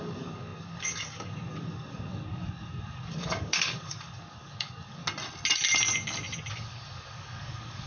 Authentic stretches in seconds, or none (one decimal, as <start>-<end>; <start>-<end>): 5.0-6.5